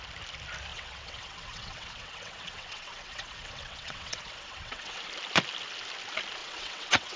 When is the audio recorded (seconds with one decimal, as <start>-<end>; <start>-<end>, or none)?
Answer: 0.0-0.7; 5.0-6.4